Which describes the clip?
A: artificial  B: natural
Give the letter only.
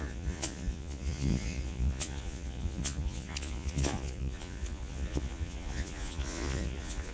A